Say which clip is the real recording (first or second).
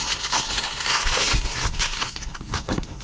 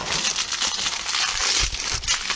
second